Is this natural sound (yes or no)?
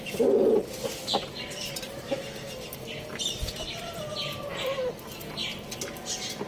yes